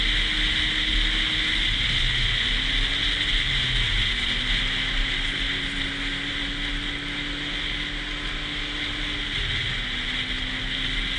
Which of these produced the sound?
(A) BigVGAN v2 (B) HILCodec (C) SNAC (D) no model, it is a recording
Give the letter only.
D